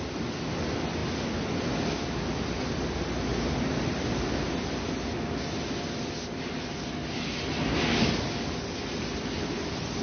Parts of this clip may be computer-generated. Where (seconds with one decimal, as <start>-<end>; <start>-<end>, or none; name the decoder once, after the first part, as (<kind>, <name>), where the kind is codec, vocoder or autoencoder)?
none